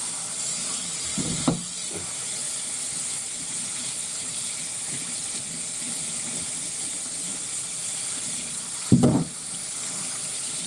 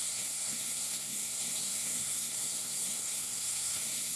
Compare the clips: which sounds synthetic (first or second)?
second